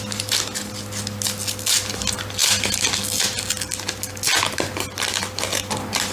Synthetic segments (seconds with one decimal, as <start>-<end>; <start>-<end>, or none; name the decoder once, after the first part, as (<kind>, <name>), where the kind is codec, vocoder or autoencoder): none